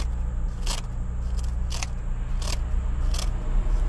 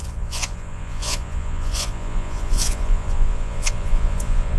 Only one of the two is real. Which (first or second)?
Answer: first